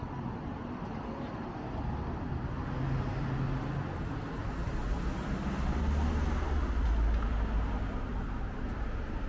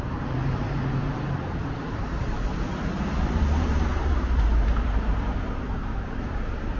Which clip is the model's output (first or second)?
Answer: second